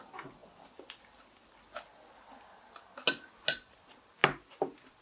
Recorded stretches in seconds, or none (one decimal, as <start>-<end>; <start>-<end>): 0.0-5.0